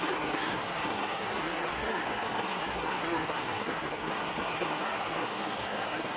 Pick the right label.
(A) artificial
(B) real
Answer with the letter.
A